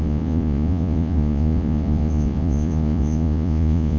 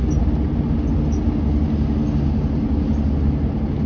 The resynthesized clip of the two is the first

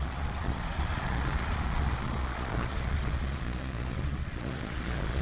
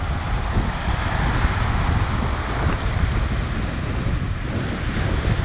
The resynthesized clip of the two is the first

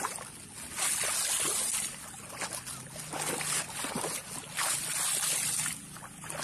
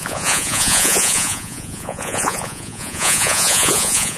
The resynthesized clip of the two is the second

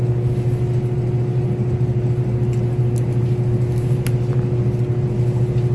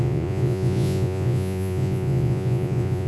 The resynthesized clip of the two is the second